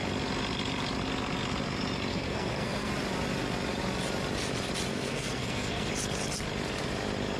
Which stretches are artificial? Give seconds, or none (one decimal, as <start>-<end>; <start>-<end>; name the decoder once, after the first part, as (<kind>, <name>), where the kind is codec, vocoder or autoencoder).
2.1-2.9 (codec, SNAC); 4.9-5.9